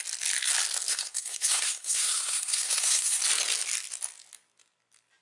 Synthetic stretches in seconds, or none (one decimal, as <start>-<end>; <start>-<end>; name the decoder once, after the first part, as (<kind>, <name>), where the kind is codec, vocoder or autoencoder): 0.9-3.2 (codec, SNAC)